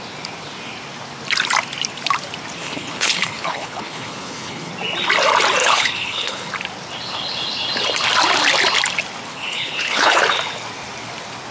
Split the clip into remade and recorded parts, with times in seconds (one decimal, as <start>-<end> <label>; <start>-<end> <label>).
0.0-2.6 recorded; 2.6-4.7 remade; 4.7-5.6 recorded; 5.6-6.5 remade; 6.5-9.3 recorded; 9.3-10.2 remade; 10.2-11.5 recorded